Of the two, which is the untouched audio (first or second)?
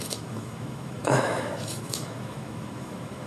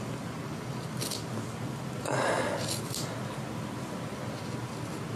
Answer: second